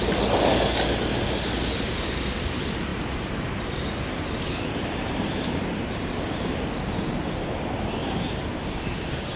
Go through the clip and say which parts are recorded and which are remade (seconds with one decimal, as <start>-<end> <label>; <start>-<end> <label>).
0.0-2.9 recorded; 2.9-6.6 remade; 6.6-8.0 recorded; 8.0-8.6 remade; 8.6-9.4 recorded